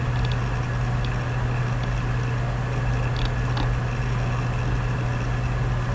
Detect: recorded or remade recorded